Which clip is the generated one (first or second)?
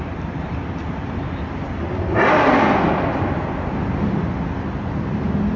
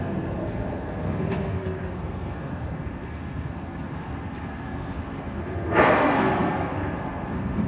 second